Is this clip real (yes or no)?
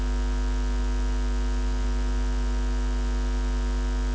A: yes